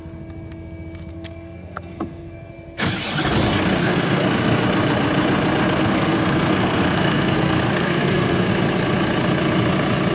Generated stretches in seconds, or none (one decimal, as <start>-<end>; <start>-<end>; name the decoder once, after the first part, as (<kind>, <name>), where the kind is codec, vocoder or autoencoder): 1.1-2.5 (codec, SNAC); 3.8-4.6; 5.8-8.5